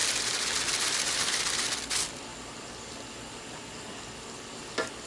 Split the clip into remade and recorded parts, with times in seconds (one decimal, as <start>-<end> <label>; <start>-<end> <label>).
0.0-5.1 recorded